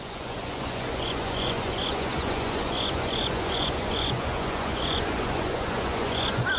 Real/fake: fake